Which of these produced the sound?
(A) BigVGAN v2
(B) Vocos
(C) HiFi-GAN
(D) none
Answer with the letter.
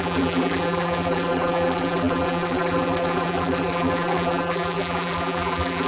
A